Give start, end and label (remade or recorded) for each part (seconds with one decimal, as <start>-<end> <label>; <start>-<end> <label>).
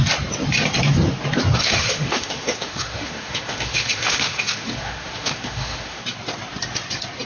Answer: 0.0-1.6 recorded; 1.6-6.0 remade; 6.0-7.3 recorded